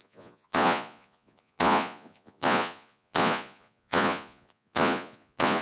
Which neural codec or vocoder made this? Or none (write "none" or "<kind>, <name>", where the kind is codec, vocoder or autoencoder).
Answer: vocoder, Vocos